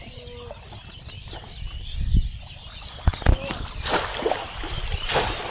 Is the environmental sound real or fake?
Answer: real